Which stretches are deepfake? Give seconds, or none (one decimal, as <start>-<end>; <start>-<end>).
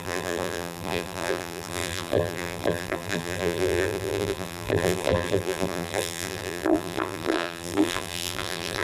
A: 0.0-8.8